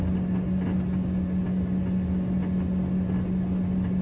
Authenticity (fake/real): real